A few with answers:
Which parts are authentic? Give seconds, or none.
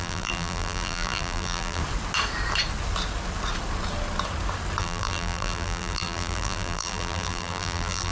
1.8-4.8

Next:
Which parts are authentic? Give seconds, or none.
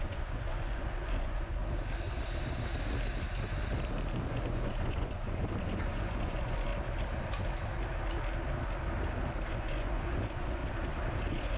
1.6-4.3; 6.7-9.5; 10.6-11.2